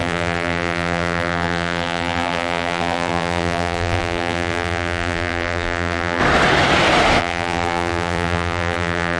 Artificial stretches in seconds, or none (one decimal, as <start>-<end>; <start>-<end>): 0.0-6.2; 7.2-9.2